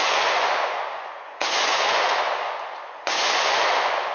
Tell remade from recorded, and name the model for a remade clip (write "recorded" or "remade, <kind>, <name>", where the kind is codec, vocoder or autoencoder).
remade, vocoder, Vocos